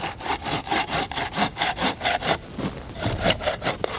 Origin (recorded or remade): recorded